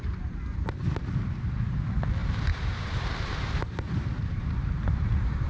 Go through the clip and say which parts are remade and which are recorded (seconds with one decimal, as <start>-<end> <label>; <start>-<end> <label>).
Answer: 0.0-2.2 recorded; 2.2-5.5 remade